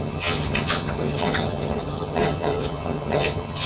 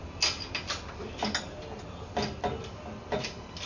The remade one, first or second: first